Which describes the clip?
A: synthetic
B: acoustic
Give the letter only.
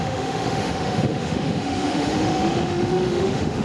A